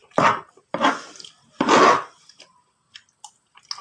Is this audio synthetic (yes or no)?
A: no